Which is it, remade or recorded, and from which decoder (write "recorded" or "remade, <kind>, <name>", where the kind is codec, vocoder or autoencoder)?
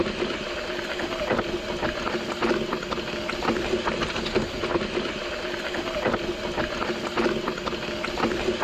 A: recorded